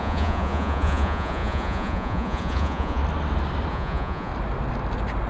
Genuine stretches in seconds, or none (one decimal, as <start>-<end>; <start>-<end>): 3.0-3.7; 4.3-5.3